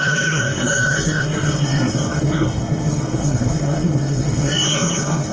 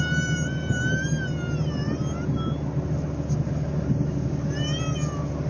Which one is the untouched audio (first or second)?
second